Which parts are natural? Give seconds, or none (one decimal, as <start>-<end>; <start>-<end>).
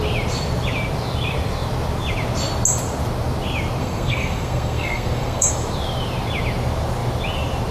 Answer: 0.0-3.8; 5.5-7.7